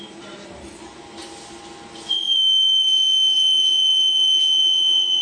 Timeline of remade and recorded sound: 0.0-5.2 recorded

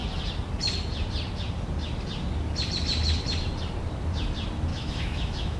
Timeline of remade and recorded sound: 0.0-4.7 recorded; 4.7-5.6 remade